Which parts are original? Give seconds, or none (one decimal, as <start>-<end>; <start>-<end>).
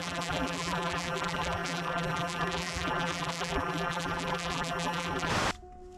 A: 5.3-6.0